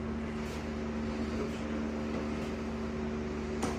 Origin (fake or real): real